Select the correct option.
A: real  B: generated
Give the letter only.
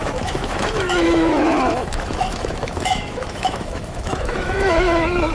B